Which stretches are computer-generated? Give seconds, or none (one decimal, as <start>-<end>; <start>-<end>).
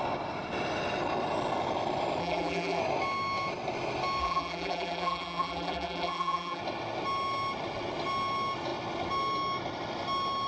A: 2.2-2.8; 4.2-6.6